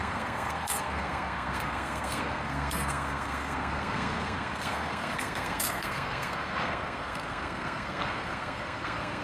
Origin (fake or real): fake